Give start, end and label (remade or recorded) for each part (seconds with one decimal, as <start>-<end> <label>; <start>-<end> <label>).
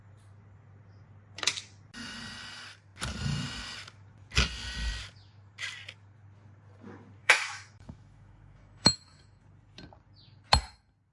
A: 0.0-7.2 recorded; 7.2-9.4 remade; 9.4-11.1 recorded